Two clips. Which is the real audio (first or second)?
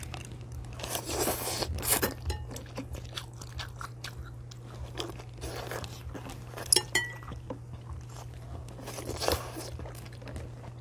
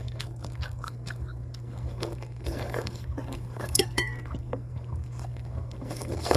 first